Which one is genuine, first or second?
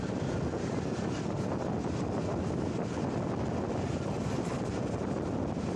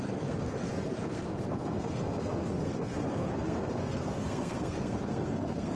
first